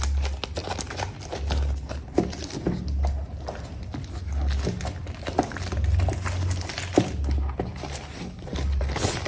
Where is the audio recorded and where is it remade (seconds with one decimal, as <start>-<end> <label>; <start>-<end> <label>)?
0.0-9.3 recorded